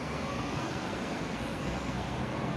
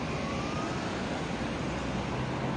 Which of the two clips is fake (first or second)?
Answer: first